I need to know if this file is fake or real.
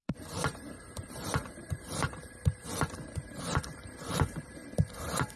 fake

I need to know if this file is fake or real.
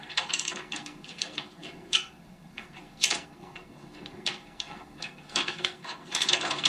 fake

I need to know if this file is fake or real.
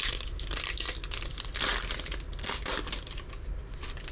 real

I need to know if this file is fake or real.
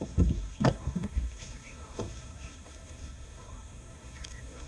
fake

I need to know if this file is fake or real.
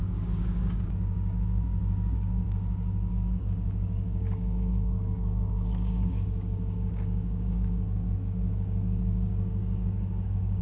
fake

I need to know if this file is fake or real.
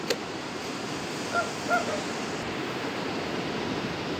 fake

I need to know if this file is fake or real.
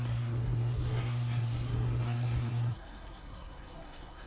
fake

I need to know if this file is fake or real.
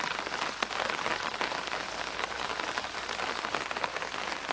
real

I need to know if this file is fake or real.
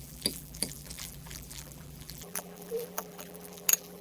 fake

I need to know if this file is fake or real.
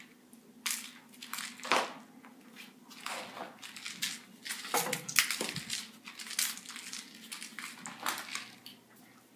real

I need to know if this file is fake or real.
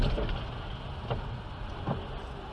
real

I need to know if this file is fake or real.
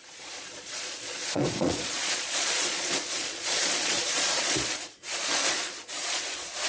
fake